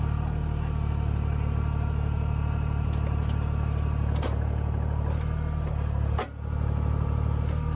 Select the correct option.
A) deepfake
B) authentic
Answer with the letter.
B